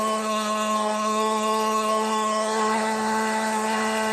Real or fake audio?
fake